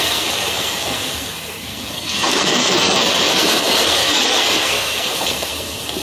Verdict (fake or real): fake